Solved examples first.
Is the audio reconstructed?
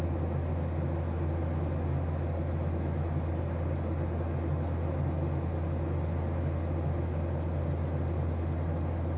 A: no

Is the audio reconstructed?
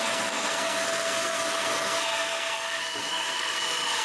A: yes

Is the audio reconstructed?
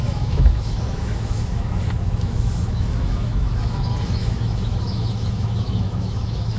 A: yes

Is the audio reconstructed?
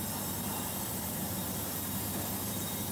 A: no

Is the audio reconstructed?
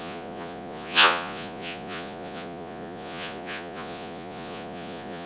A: yes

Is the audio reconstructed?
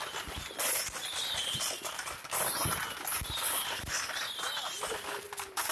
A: no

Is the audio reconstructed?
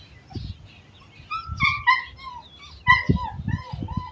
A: no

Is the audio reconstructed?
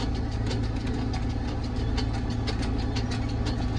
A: no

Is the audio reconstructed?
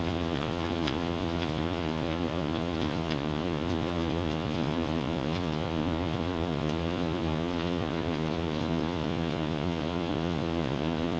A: yes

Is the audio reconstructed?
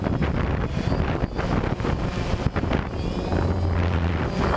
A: no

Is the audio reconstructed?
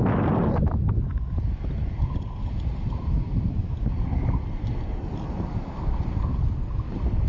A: no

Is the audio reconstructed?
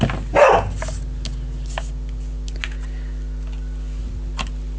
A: no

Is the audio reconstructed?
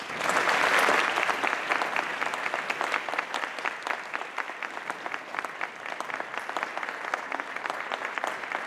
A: no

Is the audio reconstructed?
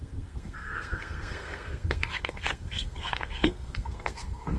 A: yes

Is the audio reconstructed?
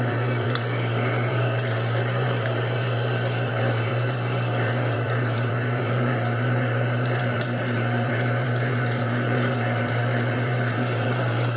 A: yes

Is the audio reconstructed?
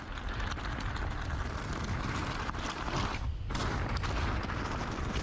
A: no